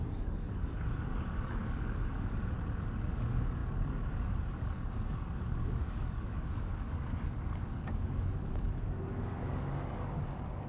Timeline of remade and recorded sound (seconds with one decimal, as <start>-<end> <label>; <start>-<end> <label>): 0.0-10.7 remade